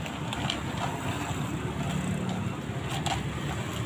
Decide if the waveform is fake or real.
real